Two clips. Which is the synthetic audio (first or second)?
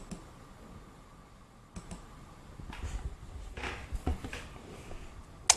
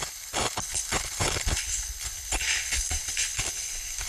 second